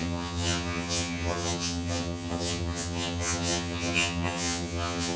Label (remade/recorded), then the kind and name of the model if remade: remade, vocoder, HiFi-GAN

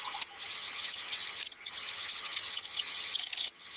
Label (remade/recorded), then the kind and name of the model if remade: remade, vocoder, HiFi-GAN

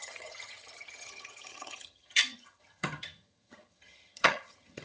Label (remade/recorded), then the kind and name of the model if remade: remade, vocoder, HiFi-GAN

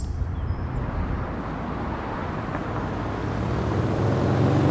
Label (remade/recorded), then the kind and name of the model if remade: recorded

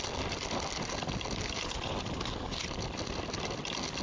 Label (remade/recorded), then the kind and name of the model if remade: recorded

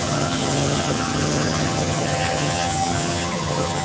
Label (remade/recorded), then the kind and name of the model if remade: remade, vocoder, HiFi-GAN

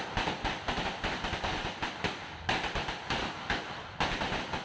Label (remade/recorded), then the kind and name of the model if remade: recorded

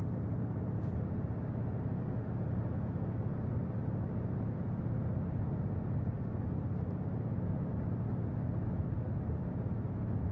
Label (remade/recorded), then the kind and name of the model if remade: recorded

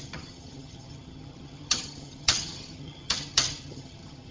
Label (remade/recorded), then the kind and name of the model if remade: remade, vocoder, HiFi-GAN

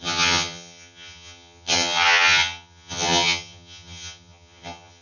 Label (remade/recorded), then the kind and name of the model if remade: remade, vocoder, HiFi-GAN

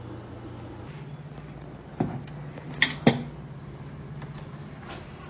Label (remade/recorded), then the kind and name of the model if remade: recorded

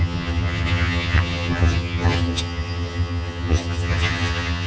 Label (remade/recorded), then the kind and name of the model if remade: remade, vocoder, HiFi-GAN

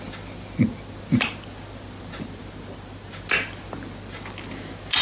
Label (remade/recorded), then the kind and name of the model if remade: recorded